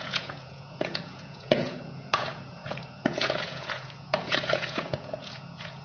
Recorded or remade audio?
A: remade